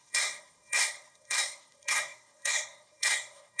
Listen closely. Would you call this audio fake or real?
fake